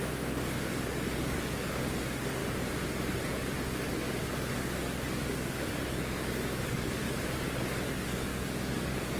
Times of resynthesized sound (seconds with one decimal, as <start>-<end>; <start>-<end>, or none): 0.0-2.4; 3.2-9.2